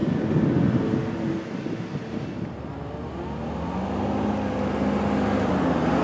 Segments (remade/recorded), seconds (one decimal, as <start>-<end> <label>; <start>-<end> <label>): 0.0-6.0 recorded